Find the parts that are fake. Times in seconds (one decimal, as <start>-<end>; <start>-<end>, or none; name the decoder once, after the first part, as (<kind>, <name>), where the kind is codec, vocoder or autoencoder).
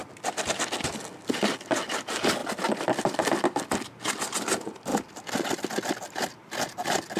none